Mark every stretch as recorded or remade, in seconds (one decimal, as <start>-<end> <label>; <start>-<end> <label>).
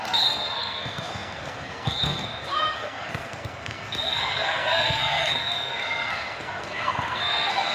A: 0.0-7.7 remade